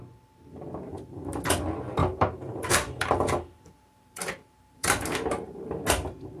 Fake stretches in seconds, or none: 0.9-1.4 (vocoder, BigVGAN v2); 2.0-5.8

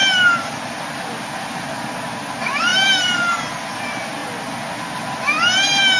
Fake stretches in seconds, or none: 2.7-3.4 (vocoder, BigVGAN v2)